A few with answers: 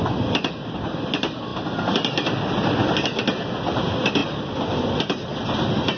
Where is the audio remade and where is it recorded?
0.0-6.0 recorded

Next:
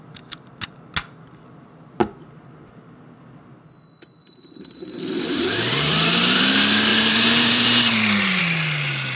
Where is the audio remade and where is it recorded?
0.0-4.2 recorded; 4.2-6.4 remade; 6.4-6.9 recorded; 6.9-8.4 remade; 8.4-9.1 recorded

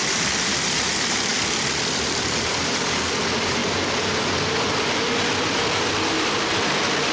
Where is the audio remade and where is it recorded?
0.0-7.1 remade

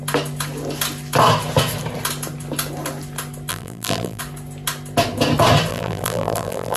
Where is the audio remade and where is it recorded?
0.0-3.5 recorded; 3.5-4.2 remade; 4.2-5.7 recorded; 5.7-6.8 remade